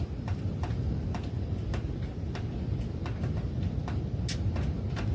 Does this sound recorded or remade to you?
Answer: recorded